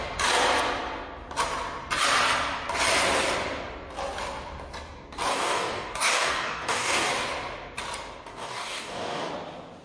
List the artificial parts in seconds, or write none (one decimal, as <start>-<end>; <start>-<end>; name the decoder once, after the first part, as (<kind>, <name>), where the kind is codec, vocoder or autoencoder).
5.3-7.1 (codec, DAC); 8.3-9.3